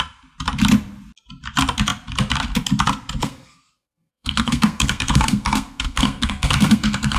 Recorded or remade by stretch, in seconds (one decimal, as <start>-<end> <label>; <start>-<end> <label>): 0.0-3.2 recorded; 3.2-7.2 remade